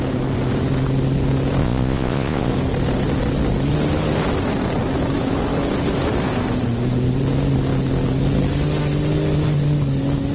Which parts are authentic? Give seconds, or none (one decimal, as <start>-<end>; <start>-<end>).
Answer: 0.0-1.6; 2.5-10.3